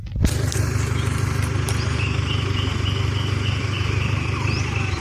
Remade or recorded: recorded